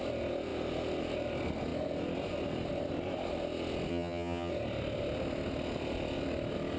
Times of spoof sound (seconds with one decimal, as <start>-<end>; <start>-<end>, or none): 3.9-4.5